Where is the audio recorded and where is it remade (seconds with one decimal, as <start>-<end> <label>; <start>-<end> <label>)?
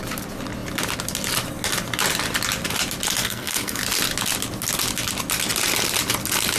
0.0-3.2 recorded; 3.2-3.8 remade; 3.8-6.6 recorded